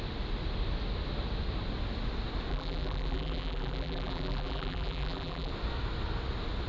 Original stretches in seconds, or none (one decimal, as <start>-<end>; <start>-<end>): 0.0-2.5; 5.5-6.7